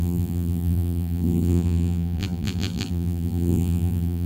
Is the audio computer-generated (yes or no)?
yes